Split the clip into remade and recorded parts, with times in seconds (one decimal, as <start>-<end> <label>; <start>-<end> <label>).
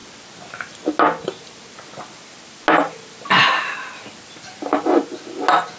0.0-5.8 recorded